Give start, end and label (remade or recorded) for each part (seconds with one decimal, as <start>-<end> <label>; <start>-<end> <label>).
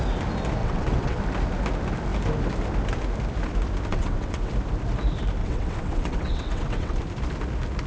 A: 0.0-0.6 recorded; 0.6-1.2 remade; 1.2-3.9 recorded; 3.9-4.5 remade; 4.5-5.4 recorded; 5.4-7.0 remade; 7.0-7.9 recorded